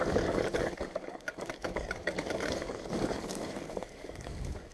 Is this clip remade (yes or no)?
yes